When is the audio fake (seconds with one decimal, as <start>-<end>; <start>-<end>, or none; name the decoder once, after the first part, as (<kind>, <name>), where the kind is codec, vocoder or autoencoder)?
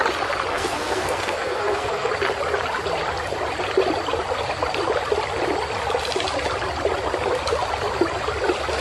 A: 0.5-2.1 (codec, SNAC)